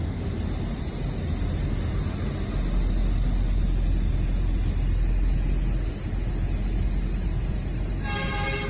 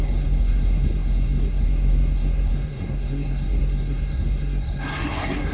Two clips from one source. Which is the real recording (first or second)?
first